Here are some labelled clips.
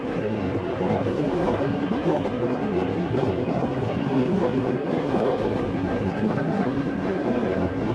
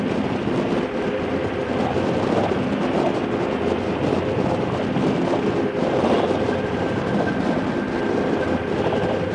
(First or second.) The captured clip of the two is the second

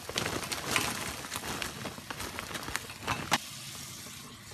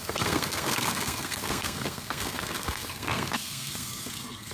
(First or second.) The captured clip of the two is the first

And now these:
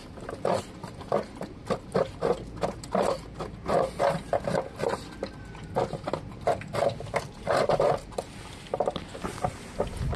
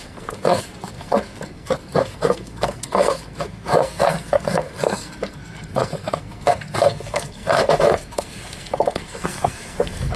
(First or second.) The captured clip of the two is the first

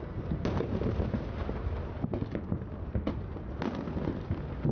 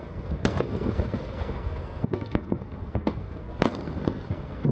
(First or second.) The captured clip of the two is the first